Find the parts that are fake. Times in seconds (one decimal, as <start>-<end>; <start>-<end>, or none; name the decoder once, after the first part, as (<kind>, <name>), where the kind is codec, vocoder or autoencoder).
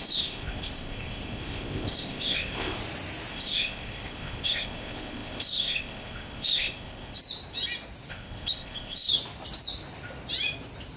0.0-2.8 (codec, ZipCodec); 3.3-7.2; 8.1-9.1